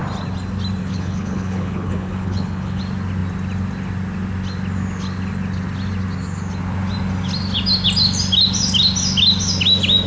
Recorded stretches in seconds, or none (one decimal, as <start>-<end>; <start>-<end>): 0.0-0.8; 2.8-10.1